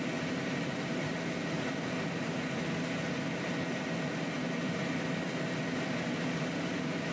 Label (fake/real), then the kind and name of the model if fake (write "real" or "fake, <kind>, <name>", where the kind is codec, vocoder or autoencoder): real